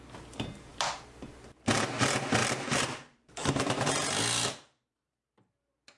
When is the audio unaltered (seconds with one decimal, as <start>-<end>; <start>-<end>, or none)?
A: 0.0-2.4; 5.5-6.0